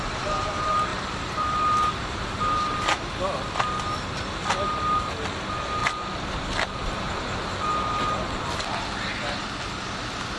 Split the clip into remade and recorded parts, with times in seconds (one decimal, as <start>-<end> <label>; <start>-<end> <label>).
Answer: 0.0-0.9 recorded; 0.9-3.2 remade; 3.2-10.4 recorded